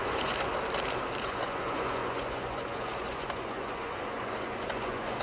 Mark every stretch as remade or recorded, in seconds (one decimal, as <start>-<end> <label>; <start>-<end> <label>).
0.0-0.5 remade; 0.5-1.2 recorded; 1.2-5.2 remade